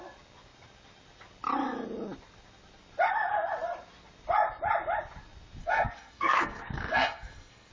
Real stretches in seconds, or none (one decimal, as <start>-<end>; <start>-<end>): 0.0-5.6